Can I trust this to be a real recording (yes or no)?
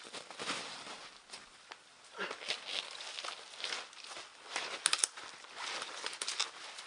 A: yes